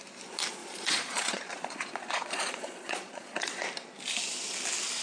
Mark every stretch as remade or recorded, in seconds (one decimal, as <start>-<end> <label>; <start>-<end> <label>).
0.0-0.6 recorded; 0.6-3.6 remade; 3.6-5.0 recorded